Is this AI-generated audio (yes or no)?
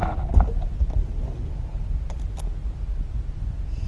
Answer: no